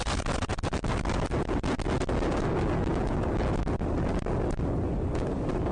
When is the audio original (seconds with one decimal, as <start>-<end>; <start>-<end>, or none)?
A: 0.0-5.7